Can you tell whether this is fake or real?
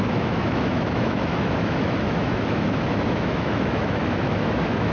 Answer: fake